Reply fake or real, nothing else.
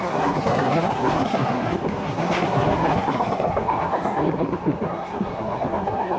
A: fake